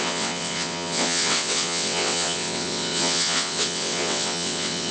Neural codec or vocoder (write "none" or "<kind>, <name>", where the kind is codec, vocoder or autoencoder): vocoder, WaveNeXt